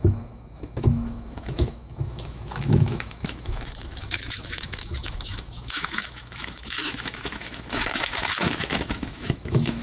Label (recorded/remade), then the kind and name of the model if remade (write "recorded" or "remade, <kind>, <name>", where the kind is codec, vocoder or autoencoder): remade, autoencoder, DAC-VAE